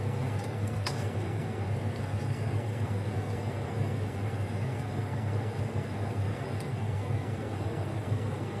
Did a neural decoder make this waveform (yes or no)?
yes